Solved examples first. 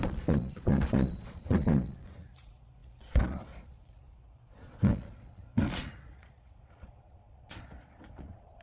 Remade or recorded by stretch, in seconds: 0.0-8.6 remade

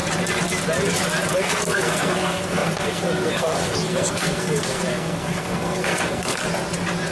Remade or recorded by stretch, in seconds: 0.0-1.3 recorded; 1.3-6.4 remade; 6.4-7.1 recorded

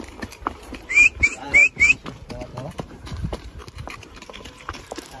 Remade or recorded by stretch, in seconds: 0.0-1.6 remade; 1.6-2.7 recorded; 2.7-5.2 remade

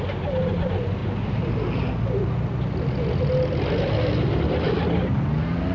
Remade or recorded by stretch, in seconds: 0.0-5.7 recorded